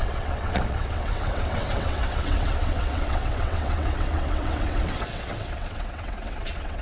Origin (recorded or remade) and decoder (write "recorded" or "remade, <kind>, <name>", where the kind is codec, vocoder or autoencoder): remade, vocoder, WaveNeXt